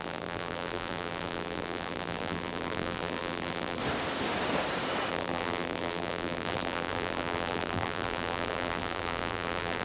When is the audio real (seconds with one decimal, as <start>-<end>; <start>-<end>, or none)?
3.8-5.1